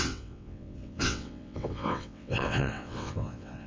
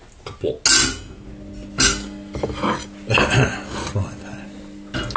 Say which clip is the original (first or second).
second